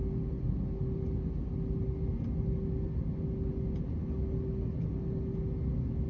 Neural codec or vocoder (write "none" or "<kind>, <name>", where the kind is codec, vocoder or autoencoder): none